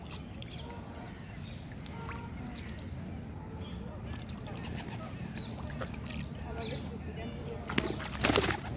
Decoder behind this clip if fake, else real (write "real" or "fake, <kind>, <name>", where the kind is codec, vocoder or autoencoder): real